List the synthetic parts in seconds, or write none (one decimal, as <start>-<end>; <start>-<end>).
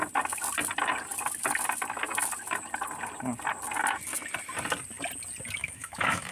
5.6-6.3